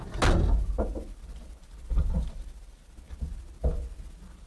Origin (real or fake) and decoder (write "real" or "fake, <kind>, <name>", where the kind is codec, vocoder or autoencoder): real